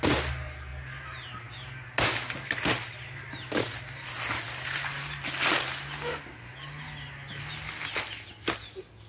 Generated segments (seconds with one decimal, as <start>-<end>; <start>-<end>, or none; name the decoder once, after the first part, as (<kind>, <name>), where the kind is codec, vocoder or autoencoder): none